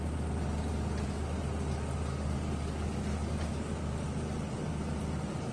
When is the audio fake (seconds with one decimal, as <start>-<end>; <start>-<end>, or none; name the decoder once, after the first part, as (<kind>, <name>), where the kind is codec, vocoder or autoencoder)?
2.1-3.9 (codec, DAC)